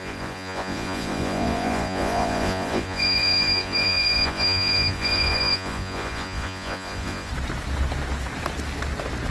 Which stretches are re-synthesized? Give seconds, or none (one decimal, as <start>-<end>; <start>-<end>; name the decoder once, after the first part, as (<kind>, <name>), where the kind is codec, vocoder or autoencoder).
0.0-7.3 (vocoder, Vocos)